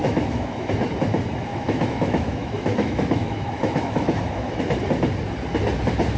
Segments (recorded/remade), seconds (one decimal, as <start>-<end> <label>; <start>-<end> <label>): 0.0-0.7 remade; 0.7-1.5 recorded; 1.5-4.6 remade; 4.6-6.2 recorded